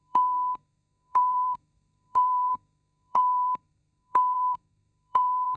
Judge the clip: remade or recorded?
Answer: remade